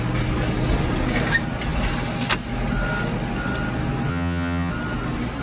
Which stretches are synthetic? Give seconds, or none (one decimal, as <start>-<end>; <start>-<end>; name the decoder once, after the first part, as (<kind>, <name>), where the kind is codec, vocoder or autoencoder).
4.1-4.7 (vocoder, HiFi-GAN)